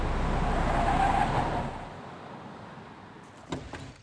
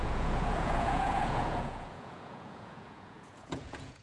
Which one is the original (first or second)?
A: first